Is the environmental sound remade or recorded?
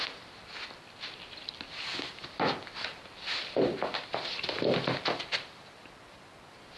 remade